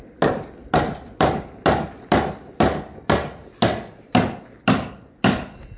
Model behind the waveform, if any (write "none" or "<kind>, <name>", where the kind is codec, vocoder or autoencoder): none